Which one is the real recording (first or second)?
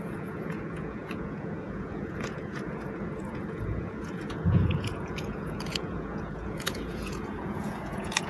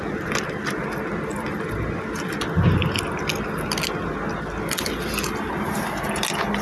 second